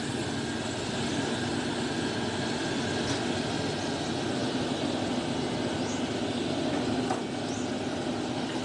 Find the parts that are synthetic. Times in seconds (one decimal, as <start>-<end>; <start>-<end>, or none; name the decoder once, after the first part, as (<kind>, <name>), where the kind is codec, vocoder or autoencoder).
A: none